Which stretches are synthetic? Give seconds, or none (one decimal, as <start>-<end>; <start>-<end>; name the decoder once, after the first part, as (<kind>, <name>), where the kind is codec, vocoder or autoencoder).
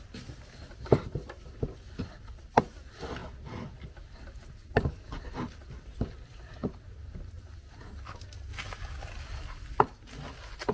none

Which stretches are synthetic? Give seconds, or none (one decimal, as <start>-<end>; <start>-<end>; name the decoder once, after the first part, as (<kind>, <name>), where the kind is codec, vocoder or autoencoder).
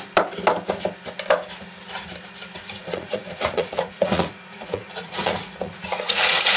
2.6-6.6 (vocoder, Vocos)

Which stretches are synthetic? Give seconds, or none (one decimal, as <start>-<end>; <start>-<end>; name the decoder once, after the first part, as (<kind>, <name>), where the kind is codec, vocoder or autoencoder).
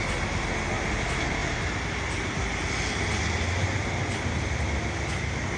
none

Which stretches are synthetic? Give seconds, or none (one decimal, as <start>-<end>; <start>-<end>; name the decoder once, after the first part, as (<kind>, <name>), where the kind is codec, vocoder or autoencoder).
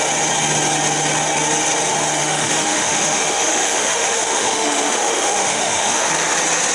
2.2-6.1 (autoencoder, DAC-VAE)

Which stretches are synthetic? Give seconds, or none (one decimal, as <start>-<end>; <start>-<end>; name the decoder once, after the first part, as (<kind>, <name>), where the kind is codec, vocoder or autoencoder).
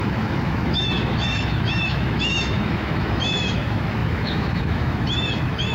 0.0-5.7 (autoencoder, DAC-VAE)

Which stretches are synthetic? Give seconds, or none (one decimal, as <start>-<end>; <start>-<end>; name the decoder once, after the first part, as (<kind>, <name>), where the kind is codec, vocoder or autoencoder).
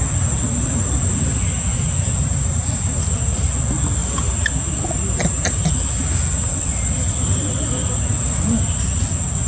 1.7-2.9 (vocoder, BigVGAN v2)